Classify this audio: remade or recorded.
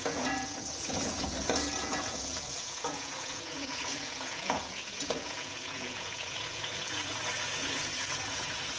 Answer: remade